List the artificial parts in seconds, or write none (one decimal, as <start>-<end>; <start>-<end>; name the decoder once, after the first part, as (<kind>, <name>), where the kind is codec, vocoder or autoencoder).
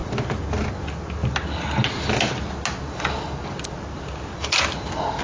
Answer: none